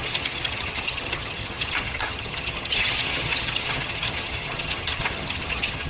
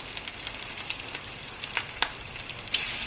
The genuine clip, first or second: second